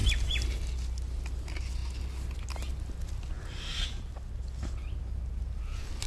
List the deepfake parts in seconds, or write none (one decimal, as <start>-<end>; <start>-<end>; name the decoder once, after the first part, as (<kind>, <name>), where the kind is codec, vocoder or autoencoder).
none